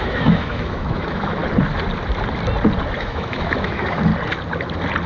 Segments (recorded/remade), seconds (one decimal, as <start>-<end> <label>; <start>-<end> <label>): 0.0-1.4 remade; 1.4-3.0 recorded; 3.0-4.1 remade; 4.1-5.1 recorded